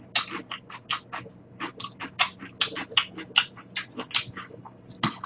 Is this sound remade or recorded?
recorded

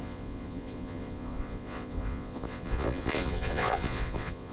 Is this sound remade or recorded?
remade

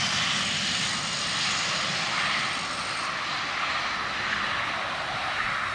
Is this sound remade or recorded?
recorded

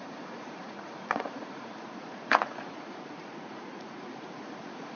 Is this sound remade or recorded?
remade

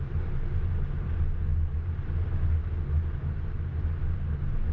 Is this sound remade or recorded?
recorded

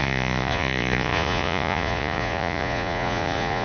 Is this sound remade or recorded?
remade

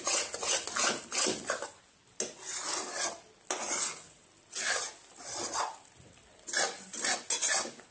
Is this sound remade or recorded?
recorded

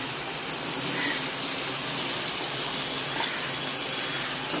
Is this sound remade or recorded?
recorded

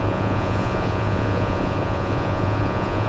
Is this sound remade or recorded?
remade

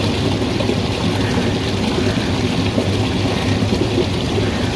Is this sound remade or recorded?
recorded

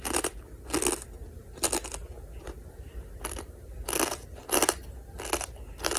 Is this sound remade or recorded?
recorded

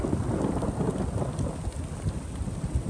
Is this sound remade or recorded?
recorded